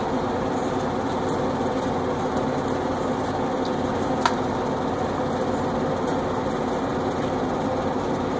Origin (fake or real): real